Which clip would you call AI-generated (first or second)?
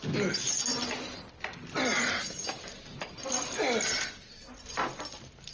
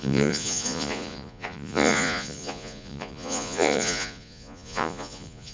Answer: second